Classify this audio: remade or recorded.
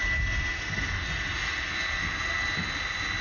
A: recorded